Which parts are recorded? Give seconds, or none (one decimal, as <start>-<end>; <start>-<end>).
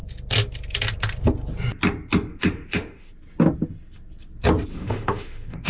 0.0-2.3; 3.1-4.7